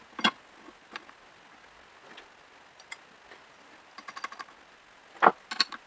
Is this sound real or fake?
real